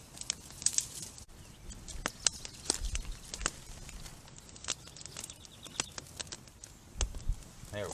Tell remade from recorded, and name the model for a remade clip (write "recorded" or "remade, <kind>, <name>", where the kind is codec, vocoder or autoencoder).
recorded